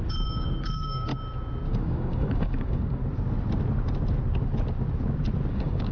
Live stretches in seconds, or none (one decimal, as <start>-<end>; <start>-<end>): 1.1-1.7; 3.0-5.5